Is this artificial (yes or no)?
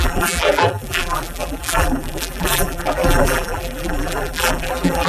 yes